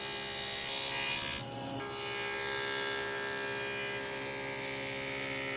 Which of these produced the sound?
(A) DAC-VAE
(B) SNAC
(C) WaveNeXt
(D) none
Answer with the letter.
D